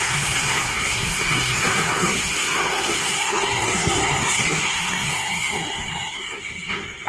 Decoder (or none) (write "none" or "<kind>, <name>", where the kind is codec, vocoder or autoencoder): codec, SNAC